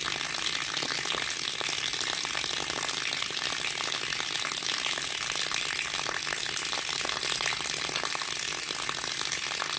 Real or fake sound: real